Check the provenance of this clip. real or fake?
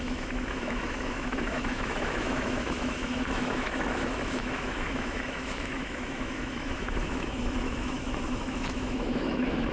fake